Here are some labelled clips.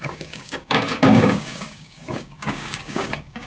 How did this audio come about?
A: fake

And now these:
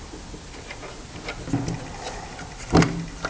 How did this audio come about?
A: real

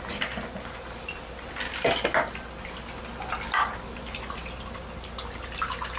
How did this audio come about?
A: real